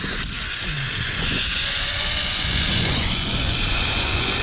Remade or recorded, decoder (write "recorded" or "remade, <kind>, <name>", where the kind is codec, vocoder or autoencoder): remade, vocoder, Vocos